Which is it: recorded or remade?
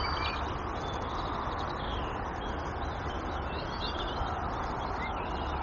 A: recorded